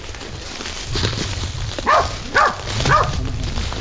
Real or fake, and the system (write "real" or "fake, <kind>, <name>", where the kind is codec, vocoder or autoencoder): real